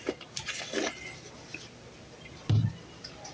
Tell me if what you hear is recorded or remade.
recorded